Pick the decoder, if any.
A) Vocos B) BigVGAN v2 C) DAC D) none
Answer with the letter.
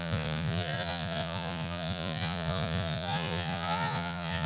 A